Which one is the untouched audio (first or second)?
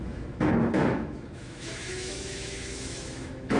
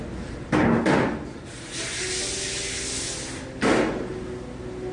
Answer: second